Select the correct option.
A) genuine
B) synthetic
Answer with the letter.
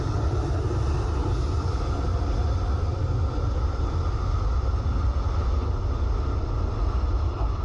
A